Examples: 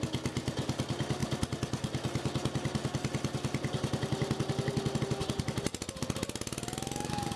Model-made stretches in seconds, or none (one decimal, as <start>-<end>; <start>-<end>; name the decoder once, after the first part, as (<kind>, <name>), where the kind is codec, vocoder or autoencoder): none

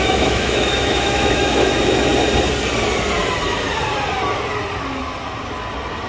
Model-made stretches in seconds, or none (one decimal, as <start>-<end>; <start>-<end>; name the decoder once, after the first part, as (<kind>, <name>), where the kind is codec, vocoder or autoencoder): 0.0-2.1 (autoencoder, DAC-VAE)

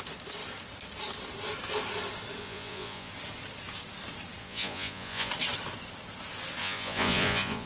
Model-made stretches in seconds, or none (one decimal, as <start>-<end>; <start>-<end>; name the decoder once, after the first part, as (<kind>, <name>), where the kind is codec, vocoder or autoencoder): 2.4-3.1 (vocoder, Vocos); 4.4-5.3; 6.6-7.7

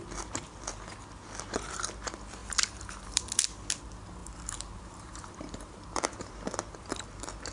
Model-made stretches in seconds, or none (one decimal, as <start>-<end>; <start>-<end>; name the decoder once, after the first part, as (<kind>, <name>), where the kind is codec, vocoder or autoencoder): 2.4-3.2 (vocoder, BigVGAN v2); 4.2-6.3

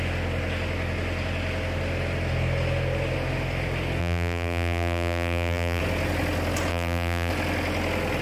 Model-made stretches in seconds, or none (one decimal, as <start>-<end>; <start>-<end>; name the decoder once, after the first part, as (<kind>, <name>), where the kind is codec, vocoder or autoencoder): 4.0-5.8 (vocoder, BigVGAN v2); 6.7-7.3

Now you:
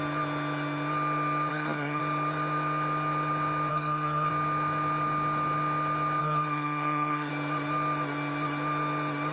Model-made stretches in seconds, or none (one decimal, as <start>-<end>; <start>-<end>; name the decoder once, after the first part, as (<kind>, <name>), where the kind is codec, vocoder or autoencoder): 1.5-2.0 (codec, SNAC); 3.7-4.3; 6.2-7.3

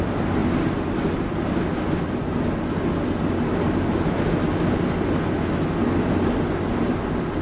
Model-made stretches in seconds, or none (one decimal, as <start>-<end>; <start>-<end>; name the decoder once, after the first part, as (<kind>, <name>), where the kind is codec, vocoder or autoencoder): none